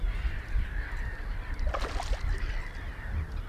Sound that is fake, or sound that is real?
real